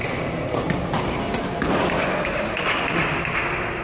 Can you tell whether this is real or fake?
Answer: real